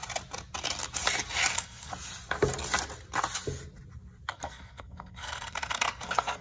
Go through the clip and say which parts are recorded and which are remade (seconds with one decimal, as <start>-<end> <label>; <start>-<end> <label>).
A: 0.0-1.5 recorded; 1.5-1.9 remade; 1.9-4.3 recorded; 4.3-6.4 remade